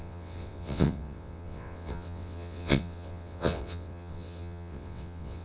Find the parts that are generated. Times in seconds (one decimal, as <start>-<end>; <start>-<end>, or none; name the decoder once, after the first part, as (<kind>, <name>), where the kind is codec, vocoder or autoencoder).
0.0-5.4 (vocoder, WaveNeXt)